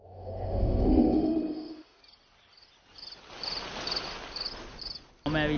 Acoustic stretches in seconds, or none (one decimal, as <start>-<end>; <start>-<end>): 2.0-5.6